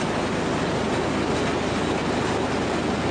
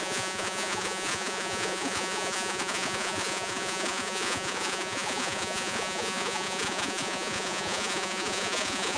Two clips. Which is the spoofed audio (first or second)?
second